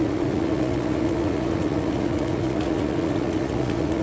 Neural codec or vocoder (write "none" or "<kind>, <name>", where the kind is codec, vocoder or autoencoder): vocoder, Vocos